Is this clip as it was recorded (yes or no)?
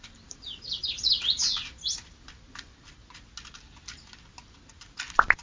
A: yes